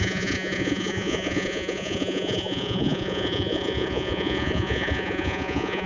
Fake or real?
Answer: fake